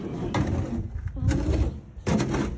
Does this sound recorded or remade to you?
recorded